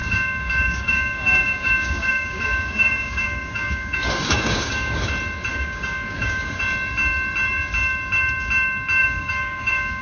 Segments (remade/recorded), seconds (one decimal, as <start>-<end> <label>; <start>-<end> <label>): 0.0-5.1 remade; 5.1-5.5 recorded; 5.5-6.6 remade; 6.6-9.0 recorded; 9.0-10.0 remade